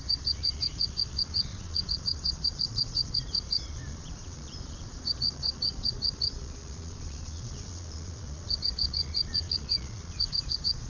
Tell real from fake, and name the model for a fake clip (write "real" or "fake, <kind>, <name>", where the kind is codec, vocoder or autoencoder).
fake, vocoder, Vocos